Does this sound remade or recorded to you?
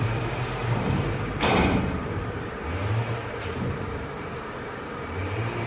remade